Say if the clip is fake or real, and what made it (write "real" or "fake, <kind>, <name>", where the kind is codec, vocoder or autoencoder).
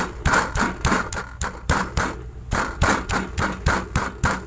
real